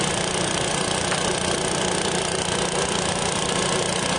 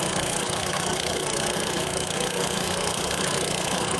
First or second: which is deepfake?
second